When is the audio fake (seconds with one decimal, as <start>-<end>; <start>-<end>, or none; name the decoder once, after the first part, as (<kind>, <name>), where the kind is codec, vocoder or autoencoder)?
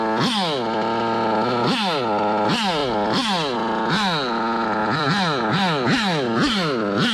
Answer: 2.8-3.9 (vocoder, BigVGAN v2); 4.8-5.5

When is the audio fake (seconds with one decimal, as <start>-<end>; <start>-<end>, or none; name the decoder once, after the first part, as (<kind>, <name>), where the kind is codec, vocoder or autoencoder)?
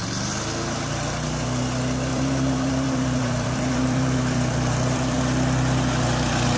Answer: 2.1-5.2 (vocoder, BigVGAN v2)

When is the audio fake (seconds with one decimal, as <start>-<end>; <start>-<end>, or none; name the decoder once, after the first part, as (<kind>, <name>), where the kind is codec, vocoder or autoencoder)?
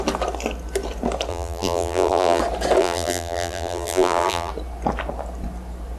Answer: 1.3-2.4 (vocoder, BigVGAN v2); 2.8-4.5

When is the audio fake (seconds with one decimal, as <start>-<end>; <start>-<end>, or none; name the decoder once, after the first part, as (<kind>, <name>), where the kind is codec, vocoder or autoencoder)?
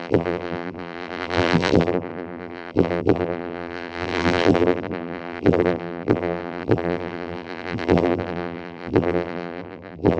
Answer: 0.0-10.2 (vocoder, BigVGAN v2)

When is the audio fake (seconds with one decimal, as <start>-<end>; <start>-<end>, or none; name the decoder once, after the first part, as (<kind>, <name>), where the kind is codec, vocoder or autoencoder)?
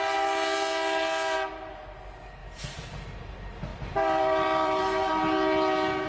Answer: 2.4-3.2 (vocoder, BigVGAN v2); 3.7-5.1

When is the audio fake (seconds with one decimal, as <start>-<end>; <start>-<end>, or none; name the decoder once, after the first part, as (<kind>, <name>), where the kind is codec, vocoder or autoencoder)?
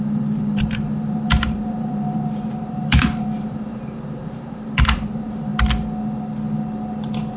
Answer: 0.0-5.5 (vocoder, BigVGAN v2)